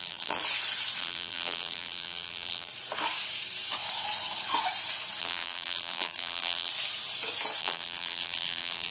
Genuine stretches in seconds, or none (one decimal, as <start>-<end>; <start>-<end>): 0.4-1.0; 2.7-5.2; 6.7-7.6

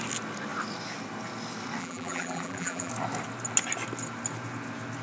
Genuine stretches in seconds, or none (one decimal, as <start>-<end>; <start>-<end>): 0.0-1.8; 2.9-5.0

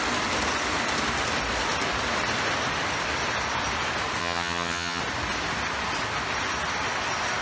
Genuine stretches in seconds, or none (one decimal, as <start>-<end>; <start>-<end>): 0.0-4.2; 5.0-7.4

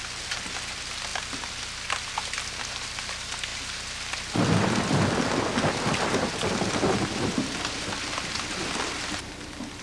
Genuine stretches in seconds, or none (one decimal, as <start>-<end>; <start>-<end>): 0.0-9.8

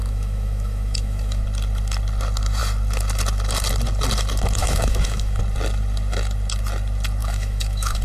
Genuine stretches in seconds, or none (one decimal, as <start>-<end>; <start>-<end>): 1.4-4.6; 5.4-7.2

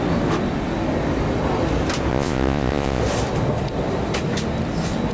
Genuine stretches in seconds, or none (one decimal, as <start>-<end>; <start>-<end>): 0.0-2.1; 3.0-5.1

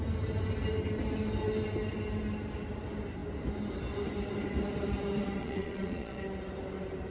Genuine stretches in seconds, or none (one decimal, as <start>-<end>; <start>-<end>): 0.0-5.4; 6.2-7.1